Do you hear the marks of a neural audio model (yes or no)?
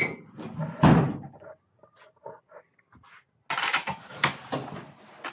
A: no